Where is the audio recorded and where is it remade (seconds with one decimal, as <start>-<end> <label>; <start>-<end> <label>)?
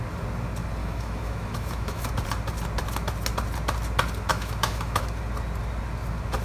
0.0-0.8 recorded; 0.8-2.1 remade; 2.1-4.3 recorded; 4.3-5.0 remade; 5.0-6.4 recorded